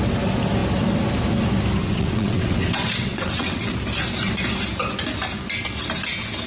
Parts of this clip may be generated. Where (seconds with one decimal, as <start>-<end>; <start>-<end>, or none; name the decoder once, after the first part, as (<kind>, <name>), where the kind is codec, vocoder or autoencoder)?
1.8-3.7 (vocoder, WaveNeXt)